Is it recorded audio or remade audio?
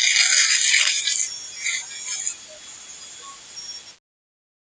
recorded